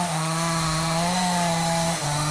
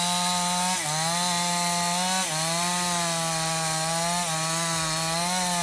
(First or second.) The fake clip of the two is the first